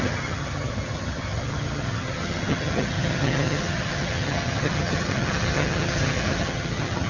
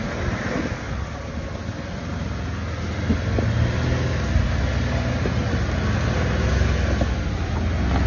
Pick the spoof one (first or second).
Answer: first